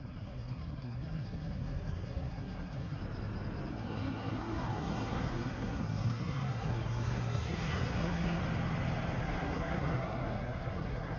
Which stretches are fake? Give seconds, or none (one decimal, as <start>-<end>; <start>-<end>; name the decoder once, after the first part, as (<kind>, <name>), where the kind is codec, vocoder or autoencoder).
0.0-3.0 (codec, SNAC); 3.7-8.4; 9.2-11.2